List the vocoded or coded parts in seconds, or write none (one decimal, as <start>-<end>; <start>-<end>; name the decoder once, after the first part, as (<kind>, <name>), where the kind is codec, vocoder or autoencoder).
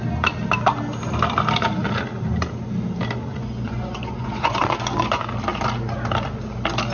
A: 3.3-5.2 (vocoder, Vocos)